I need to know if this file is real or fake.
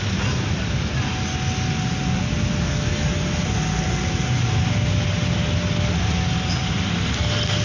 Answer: real